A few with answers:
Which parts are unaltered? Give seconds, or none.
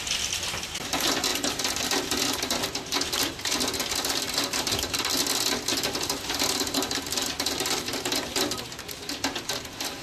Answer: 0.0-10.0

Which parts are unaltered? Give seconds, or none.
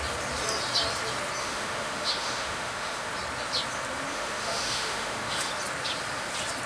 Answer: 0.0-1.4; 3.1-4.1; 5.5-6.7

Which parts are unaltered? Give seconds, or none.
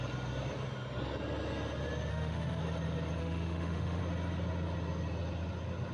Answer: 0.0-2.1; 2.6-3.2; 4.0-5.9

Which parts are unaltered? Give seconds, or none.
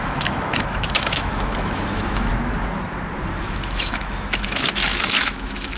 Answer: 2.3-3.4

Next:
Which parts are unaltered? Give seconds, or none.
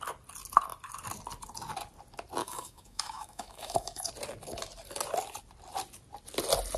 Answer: 0.0-2.4; 4.1-6.8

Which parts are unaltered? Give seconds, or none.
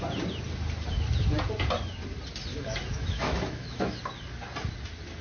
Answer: 0.0-2.5; 4.0-5.2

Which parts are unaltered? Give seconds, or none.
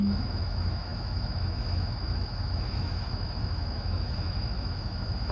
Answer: none